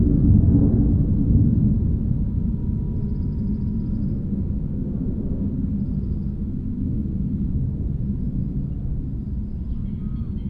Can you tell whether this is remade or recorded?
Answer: recorded